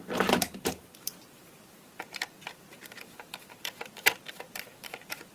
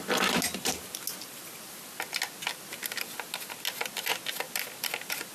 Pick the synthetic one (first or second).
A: first